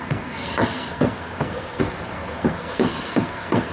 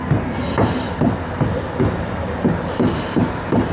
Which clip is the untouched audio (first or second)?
second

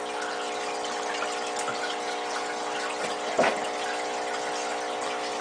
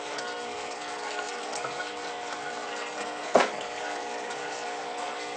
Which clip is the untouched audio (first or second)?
first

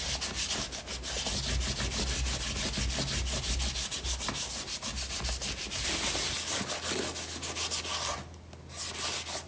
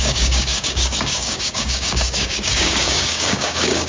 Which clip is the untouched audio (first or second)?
first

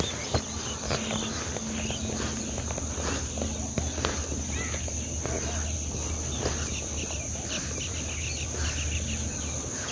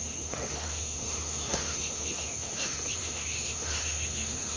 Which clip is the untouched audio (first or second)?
first